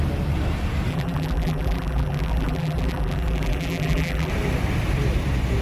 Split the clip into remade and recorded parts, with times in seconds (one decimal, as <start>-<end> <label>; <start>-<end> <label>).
0.0-0.9 recorded; 0.9-4.3 remade; 4.3-5.6 recorded